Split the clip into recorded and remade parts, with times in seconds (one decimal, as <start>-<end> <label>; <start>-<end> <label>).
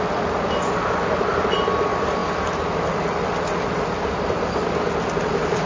0.0-5.7 recorded